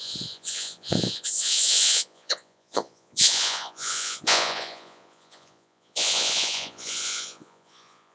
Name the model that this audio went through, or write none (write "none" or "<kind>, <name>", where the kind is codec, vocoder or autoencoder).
vocoder, Vocos